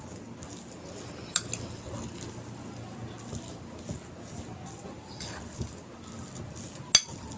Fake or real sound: real